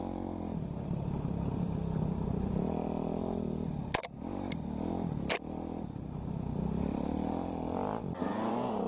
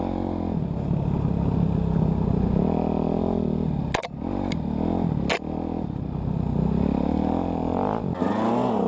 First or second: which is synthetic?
first